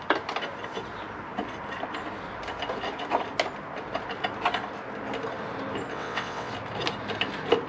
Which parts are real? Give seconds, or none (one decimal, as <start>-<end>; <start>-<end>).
0.0-5.9; 6.5-7.7